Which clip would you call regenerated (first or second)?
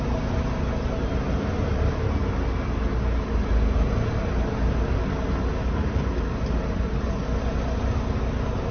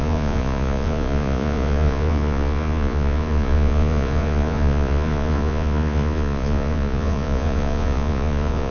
second